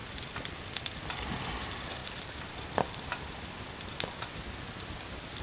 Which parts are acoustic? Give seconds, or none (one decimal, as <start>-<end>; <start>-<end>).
0.0-5.4